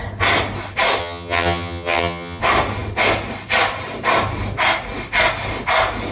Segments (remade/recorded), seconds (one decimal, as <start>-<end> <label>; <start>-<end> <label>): 0.0-1.0 recorded; 1.0-2.4 remade; 2.4-6.1 recorded